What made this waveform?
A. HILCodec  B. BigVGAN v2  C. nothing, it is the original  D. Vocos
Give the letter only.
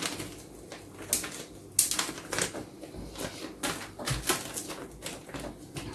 C